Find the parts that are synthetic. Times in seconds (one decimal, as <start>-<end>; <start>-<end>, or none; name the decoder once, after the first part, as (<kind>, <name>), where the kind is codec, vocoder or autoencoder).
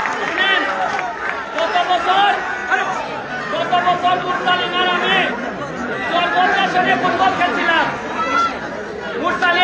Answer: none